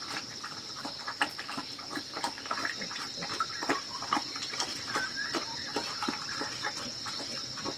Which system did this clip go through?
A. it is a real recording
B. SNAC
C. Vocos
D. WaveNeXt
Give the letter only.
A